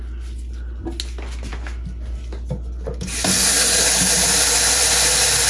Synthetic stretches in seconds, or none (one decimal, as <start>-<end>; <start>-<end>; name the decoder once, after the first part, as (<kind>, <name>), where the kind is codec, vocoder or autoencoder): none